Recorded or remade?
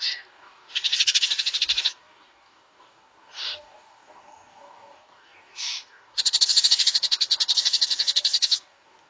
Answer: remade